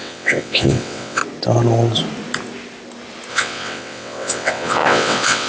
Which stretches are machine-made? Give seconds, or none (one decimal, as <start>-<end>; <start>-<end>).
0.0-1.2; 3.3-5.5